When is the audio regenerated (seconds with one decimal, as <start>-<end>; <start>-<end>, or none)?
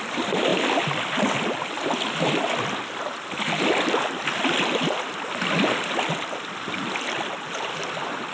0.0-0.5; 5.4-8.3